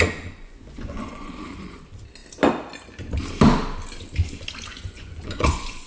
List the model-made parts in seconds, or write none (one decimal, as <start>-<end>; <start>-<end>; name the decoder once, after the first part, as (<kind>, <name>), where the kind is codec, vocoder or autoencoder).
0.4-1.8 (vocoder, Vocos); 4.7-5.9